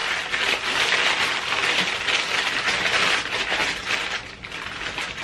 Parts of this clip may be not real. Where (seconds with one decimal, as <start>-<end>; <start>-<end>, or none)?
none